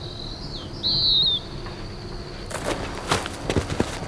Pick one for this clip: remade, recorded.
recorded